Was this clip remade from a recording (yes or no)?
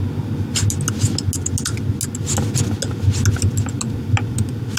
no